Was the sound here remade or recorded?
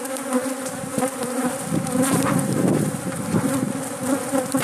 recorded